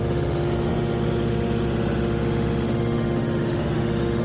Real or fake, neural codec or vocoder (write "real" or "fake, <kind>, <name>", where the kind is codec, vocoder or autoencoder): fake, autoencoder, DAC-VAE